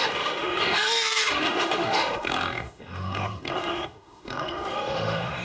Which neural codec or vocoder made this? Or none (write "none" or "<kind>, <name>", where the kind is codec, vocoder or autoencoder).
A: autoencoder, DAC-VAE